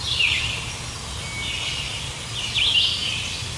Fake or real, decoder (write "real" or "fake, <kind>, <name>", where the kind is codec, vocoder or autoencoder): real